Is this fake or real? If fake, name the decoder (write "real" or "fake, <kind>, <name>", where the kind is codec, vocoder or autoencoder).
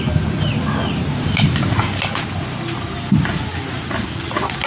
real